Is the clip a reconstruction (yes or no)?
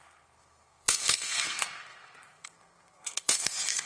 yes